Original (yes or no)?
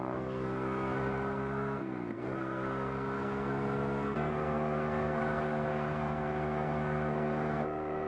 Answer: no